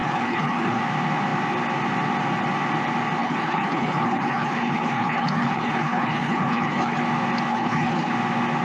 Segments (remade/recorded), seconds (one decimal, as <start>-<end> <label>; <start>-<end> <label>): 0.0-0.8 remade; 0.8-3.2 recorded; 3.2-7.0 remade; 7.0-7.5 recorded; 7.5-8.1 remade; 8.1-8.6 recorded